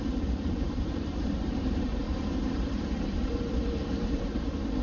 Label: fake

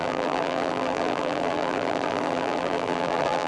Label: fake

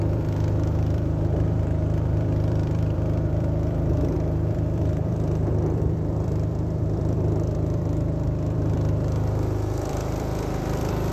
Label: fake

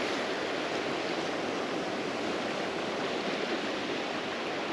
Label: real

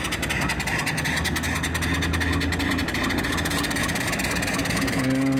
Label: real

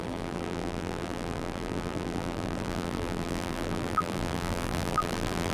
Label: fake